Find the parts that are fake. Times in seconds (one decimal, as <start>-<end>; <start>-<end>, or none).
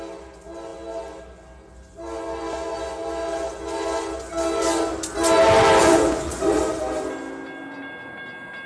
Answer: 5.8-6.6